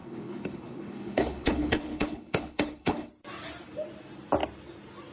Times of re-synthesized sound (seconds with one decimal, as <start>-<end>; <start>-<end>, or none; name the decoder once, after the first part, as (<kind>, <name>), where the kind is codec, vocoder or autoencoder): 0.0-3.1 (codec, HILCodec)